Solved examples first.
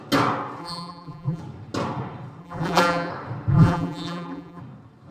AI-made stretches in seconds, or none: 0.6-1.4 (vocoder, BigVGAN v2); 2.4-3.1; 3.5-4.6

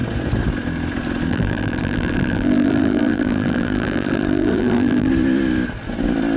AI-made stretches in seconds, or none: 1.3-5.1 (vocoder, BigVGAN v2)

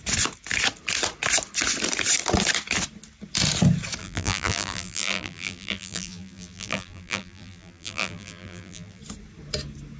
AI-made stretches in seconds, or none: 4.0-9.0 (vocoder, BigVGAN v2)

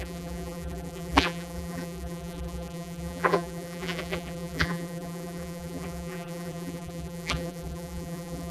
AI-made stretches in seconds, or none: 0.0-8.5 (vocoder, BigVGAN v2)